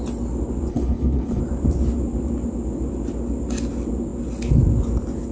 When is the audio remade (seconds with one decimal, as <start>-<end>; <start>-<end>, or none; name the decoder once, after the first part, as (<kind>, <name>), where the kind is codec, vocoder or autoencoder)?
0.7-1.4 (codec, HILCodec)